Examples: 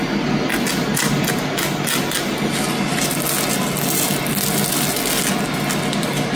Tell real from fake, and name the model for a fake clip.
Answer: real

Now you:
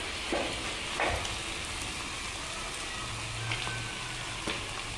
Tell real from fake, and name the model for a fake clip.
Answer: real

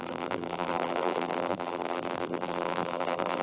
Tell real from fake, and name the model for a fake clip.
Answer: fake, vocoder, BigVGAN v2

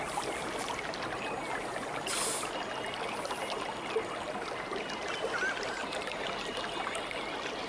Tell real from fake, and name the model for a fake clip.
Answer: real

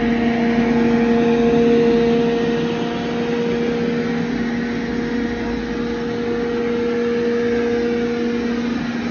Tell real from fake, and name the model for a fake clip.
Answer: real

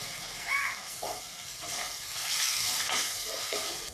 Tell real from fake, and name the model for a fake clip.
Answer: fake, codec, SNAC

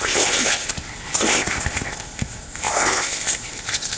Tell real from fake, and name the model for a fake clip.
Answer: fake, codec, ZipCodec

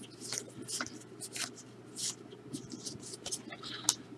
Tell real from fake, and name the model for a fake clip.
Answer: real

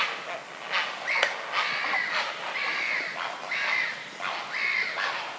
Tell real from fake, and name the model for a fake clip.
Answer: real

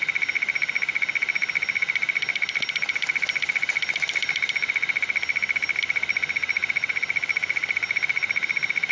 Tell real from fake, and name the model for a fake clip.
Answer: real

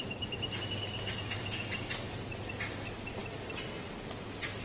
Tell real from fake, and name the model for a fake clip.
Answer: real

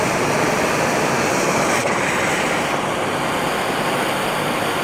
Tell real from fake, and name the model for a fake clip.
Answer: real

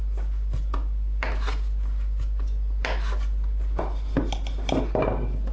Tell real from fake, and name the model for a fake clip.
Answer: real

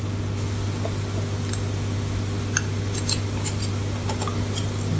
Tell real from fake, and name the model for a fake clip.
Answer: real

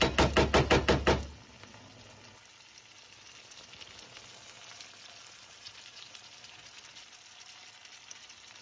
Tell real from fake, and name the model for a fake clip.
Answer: real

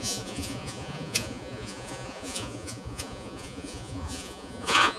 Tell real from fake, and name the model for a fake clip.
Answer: fake, vocoder, Vocos